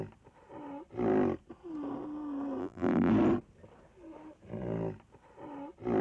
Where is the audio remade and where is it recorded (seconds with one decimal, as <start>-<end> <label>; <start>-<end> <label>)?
0.0-2.6 recorded; 2.6-3.1 remade; 3.1-6.0 recorded